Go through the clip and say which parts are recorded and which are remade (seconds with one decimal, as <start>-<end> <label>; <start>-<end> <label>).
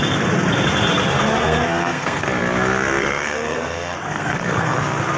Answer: 0.0-1.2 recorded; 1.2-2.2 remade; 2.2-3.0 recorded; 3.0-4.8 remade; 4.8-5.2 recorded